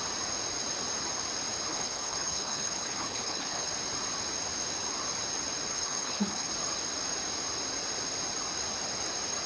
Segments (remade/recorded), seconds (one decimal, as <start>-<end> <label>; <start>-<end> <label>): 0.0-1.7 recorded; 1.7-3.7 remade; 3.7-5.7 recorded; 5.7-6.5 remade; 6.5-9.5 recorded